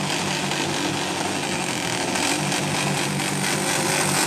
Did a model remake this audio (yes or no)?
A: no